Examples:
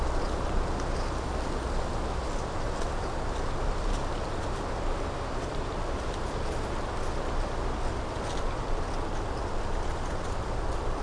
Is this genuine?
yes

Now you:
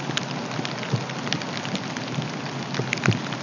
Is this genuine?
yes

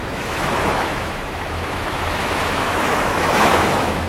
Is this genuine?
no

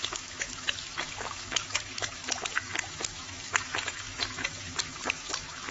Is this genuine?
no